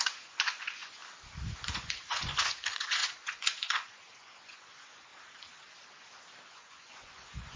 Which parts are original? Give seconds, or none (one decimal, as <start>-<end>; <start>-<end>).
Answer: 1.0-1.7; 5.1-6.5